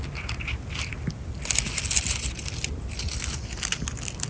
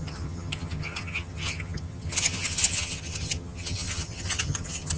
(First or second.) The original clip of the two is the first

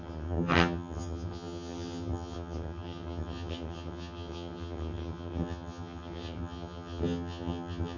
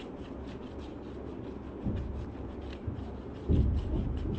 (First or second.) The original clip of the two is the second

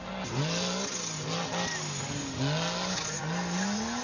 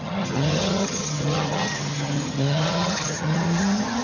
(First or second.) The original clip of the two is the first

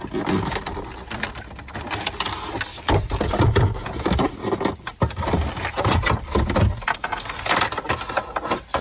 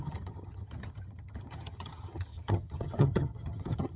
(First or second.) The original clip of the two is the first